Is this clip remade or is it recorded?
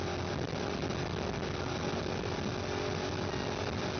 recorded